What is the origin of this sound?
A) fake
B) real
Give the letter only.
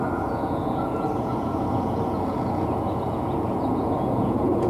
A